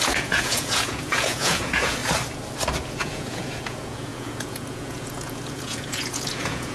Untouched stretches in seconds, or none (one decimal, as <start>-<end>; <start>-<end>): 2.0-3.0